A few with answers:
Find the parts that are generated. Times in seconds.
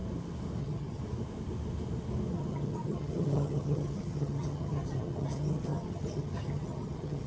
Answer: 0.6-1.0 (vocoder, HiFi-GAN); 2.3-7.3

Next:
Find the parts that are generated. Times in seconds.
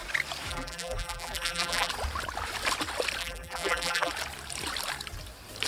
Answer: 0.5-1.9 (vocoder, BigVGAN v2); 3.2-4.1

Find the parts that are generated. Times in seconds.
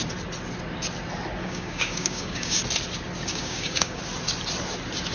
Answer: 1.4-2.6 (codec, DAC); 3.3-4.0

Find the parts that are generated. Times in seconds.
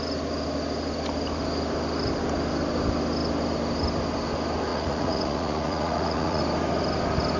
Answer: 4.7-6.4 (vocoder, Vocos)